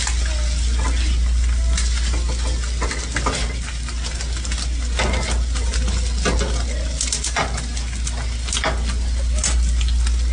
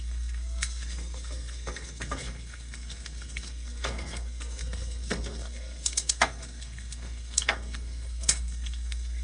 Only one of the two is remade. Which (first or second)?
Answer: second